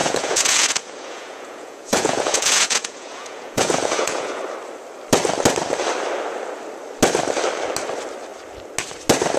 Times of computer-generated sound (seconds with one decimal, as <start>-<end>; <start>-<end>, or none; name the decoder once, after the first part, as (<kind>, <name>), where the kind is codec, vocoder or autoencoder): 0.0-4.4 (vocoder, Vocos)